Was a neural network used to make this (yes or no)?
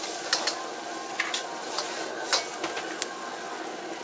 no